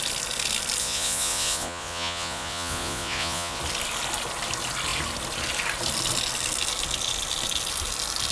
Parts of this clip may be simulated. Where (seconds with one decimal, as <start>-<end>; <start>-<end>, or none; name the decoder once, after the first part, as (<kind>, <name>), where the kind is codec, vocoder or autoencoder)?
0.8-3.6 (vocoder, Vocos)